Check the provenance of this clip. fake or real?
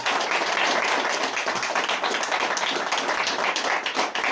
real